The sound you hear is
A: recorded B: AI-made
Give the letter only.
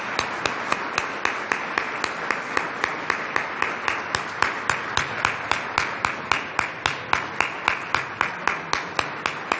A